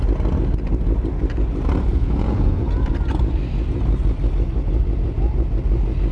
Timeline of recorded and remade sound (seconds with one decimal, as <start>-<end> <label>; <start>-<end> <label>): 0.0-1.9 recorded; 1.9-2.9 remade; 2.9-6.1 recorded